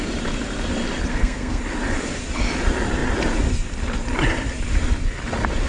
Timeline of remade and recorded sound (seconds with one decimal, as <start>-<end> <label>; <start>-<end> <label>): 0.0-1.1 recorded; 1.1-1.6 remade; 1.6-5.7 recorded